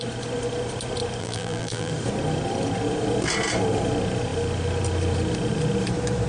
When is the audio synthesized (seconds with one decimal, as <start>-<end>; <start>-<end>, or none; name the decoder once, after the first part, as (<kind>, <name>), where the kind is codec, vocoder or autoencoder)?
1.2-1.9 (vocoder, BigVGAN v2)